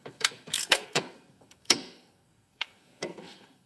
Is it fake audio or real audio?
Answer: fake